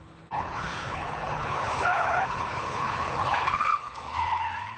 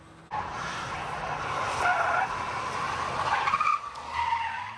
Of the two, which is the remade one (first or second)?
first